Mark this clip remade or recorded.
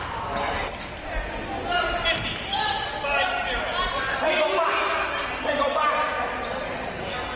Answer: recorded